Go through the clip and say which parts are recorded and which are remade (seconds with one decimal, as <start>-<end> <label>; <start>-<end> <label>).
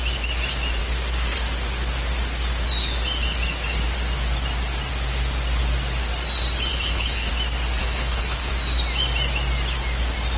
0.0-6.7 recorded; 6.7-7.3 remade; 7.3-7.8 recorded; 7.8-8.5 remade; 8.5-10.4 recorded